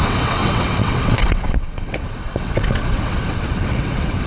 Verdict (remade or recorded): remade